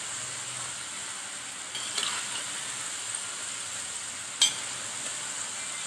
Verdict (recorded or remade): recorded